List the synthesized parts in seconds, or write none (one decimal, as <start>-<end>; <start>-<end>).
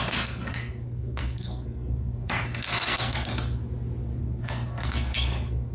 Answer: 0.0-3.3; 4.2-5.7